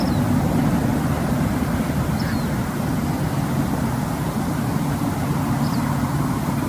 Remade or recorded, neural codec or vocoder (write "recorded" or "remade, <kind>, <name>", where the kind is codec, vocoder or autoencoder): recorded